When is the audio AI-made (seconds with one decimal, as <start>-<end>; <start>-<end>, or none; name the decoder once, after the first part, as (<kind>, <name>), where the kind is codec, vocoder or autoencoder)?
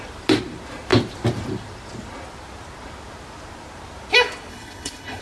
4.5-5.2 (codec, HILCodec)